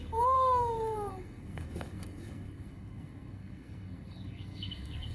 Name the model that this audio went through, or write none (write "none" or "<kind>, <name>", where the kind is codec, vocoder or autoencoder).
codec, SNAC